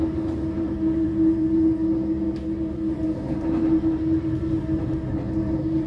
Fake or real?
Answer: real